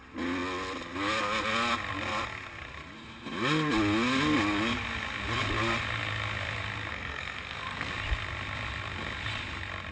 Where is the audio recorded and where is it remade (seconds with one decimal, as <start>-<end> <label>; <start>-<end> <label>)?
0.0-6.9 recorded; 6.9-7.9 remade; 7.9-9.9 recorded